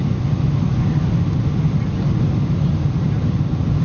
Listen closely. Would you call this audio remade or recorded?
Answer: recorded